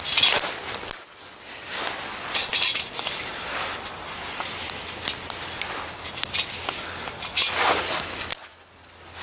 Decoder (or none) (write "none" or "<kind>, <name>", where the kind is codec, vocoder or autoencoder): none